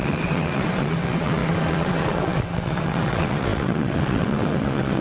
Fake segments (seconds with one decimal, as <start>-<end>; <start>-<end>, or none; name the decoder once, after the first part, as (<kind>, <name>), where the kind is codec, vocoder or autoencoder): 0.0-5.0 (vocoder, WaveNeXt)

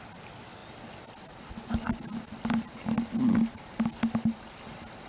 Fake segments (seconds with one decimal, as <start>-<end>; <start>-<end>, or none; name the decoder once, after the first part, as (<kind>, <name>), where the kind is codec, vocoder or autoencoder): none

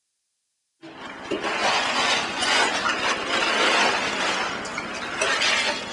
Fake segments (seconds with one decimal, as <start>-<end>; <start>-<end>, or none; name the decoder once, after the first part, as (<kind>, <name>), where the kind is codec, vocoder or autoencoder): 1.6-2.7 (vocoder, Vocos)

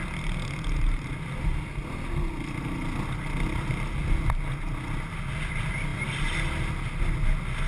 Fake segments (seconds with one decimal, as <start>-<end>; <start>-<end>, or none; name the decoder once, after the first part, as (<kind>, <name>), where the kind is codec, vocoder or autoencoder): none

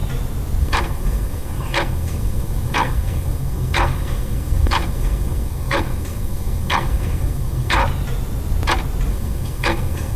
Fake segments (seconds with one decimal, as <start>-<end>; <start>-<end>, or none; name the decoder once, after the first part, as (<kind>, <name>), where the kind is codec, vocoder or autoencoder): 0.6-7.8 (codec, SNAC); 9.1-10.2

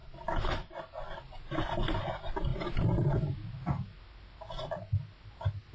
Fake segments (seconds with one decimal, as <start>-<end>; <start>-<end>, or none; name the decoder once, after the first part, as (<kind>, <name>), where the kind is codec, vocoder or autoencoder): none